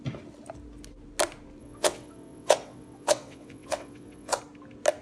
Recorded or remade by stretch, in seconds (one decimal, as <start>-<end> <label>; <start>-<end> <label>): 0.0-1.6 recorded; 1.6-4.4 remade; 4.4-5.0 recorded